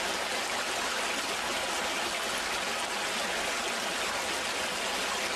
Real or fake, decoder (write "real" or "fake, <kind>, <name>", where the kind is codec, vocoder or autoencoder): real